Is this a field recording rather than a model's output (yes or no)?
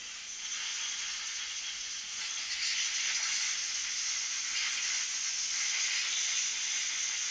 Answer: no